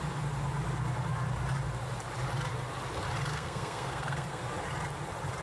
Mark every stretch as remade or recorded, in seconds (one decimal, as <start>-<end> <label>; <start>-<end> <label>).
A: 0.0-3.3 recorded; 3.3-4.4 remade; 4.4-5.4 recorded